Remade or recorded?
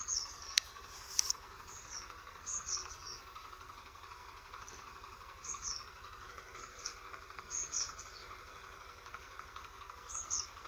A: remade